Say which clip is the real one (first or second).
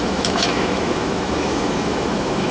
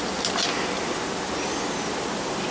second